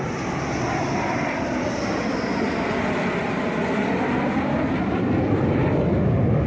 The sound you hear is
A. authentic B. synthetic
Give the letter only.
A